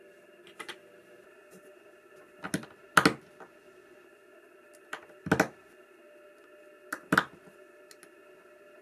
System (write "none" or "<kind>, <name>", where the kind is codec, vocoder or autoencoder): none